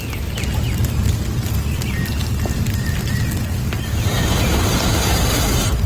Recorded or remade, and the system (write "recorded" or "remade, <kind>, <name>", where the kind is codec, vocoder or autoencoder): recorded